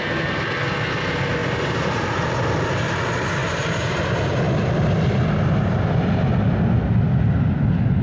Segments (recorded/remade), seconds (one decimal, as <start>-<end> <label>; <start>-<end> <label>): 0.0-1.4 recorded; 1.4-2.4 remade; 2.4-3.4 recorded; 3.4-4.0 remade; 4.0-8.0 recorded